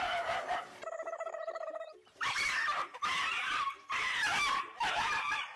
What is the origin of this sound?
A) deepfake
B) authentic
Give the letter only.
A